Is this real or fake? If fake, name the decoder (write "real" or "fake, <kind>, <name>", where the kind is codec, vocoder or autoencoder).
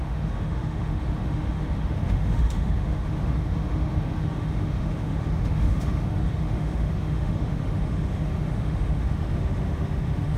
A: fake, autoencoder, DAC-VAE